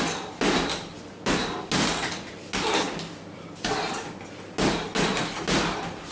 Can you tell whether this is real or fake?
real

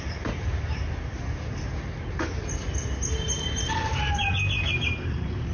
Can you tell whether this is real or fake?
real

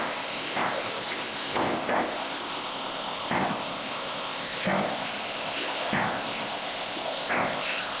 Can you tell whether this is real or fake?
fake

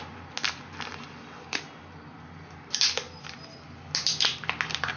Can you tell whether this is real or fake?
real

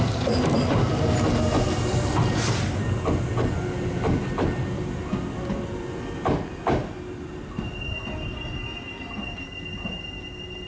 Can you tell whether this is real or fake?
real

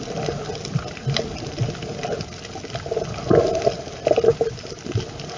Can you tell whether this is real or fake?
real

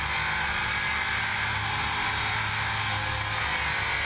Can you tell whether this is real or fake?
real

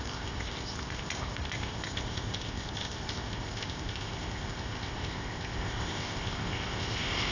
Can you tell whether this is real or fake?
fake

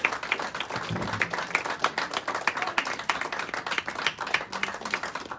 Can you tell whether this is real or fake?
real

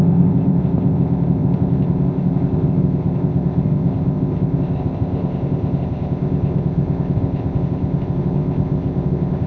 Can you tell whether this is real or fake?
fake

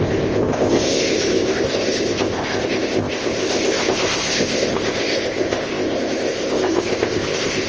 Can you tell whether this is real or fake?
fake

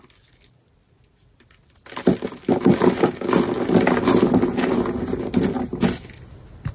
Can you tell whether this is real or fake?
real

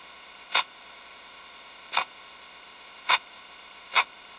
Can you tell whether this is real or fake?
fake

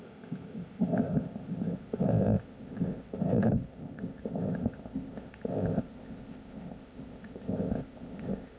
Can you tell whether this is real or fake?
fake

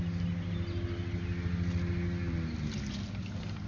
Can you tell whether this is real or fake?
real